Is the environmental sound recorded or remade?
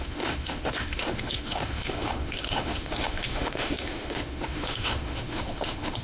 remade